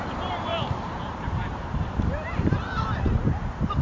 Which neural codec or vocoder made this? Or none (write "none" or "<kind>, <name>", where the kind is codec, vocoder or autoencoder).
vocoder, BigVGAN v2